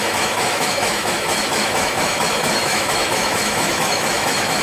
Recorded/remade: remade